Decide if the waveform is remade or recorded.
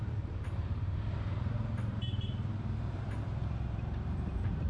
remade